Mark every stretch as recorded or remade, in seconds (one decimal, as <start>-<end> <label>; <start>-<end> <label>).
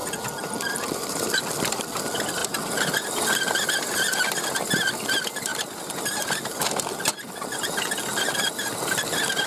0.0-1.8 remade; 1.8-5.5 recorded; 5.5-6.5 remade; 6.5-8.1 recorded; 8.1-8.7 remade; 8.7-9.5 recorded